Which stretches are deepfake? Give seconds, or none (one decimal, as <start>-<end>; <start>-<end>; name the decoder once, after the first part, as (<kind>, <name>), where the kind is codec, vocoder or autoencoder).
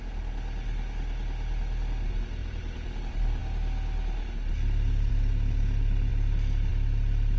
2.4-3.0 (vocoder, BigVGAN v2)